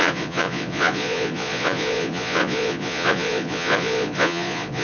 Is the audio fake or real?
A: fake